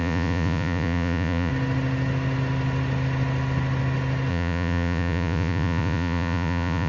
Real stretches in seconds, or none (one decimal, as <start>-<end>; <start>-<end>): 1.5-4.3